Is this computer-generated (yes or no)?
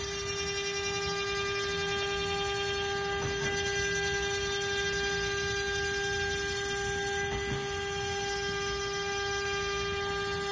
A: no